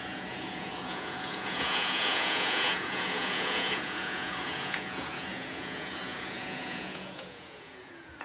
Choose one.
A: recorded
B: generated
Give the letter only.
B